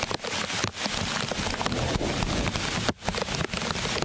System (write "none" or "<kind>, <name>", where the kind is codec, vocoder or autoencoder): none